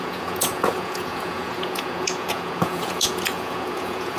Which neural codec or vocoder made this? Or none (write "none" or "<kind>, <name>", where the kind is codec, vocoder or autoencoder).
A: vocoder, Vocos